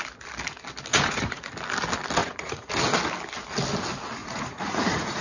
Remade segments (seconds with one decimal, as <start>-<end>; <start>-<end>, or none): 0.9-1.5; 2.2-2.7; 4.2-5.2